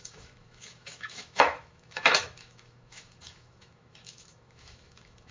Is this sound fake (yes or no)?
yes